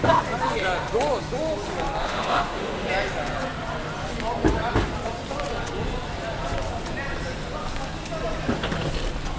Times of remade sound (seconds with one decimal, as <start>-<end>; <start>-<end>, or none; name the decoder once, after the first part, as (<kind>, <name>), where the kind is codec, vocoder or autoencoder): 2.0-2.9 (autoencoder, DAC-VAE)